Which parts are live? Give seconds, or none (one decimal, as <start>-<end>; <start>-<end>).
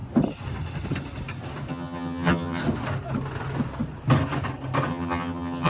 0.0-1.7; 2.6-4.9